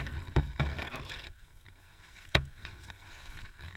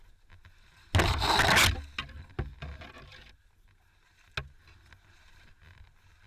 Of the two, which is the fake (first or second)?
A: first